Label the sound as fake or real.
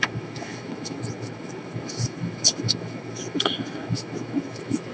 fake